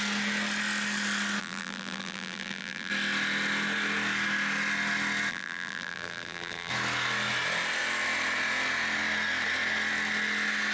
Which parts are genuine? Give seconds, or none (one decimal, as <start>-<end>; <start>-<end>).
0.0-1.4; 2.9-5.3; 6.7-10.7